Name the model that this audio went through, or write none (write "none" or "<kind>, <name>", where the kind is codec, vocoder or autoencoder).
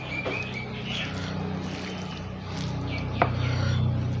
none